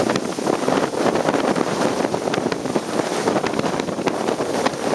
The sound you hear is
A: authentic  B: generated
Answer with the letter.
A